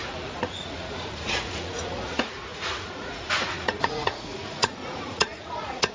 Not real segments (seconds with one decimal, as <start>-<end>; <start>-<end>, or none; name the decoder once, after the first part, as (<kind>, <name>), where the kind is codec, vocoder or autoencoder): 0.0-5.9 (vocoder, Vocos)